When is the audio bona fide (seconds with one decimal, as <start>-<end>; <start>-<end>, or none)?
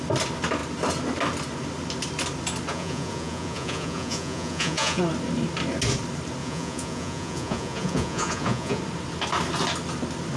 0.0-2.7; 5.0-6.4; 8.8-10.4